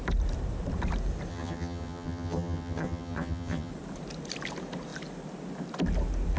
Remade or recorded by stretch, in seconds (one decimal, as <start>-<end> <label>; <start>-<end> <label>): 0.0-1.3 recorded; 1.3-3.7 remade; 3.7-6.4 recorded

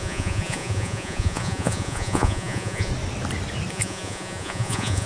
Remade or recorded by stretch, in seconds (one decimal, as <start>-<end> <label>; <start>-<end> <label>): 0.0-2.9 remade; 2.9-3.7 recorded; 3.7-5.1 remade

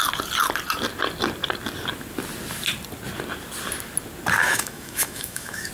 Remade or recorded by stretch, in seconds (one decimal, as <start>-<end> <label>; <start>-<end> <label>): 0.0-4.4 recorded; 4.4-5.7 remade

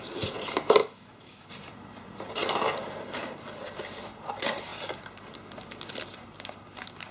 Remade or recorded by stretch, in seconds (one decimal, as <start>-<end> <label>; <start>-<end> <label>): 0.0-0.8 recorded; 0.8-1.5 remade; 1.5-7.1 recorded

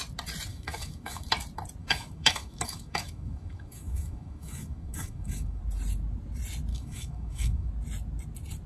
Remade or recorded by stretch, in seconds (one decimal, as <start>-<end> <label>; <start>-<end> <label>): 0.0-0.5 recorded; 0.5-1.3 remade; 1.3-1.8 recorded; 1.8-5.6 remade; 5.6-6.7 recorded; 6.7-7.7 remade; 7.7-8.7 recorded

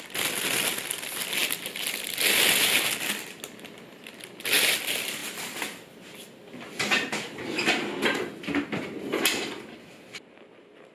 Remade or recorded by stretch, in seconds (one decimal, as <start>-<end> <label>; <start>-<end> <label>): 0.0-10.9 recorded